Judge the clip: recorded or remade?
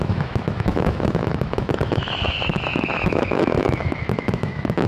remade